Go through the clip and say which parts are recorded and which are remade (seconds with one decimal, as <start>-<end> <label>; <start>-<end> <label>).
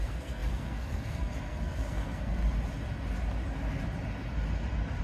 0.0-2.4 remade; 2.4-5.0 recorded